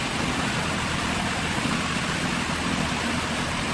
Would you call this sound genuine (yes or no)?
yes